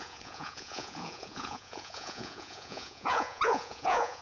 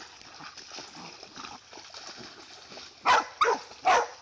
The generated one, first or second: first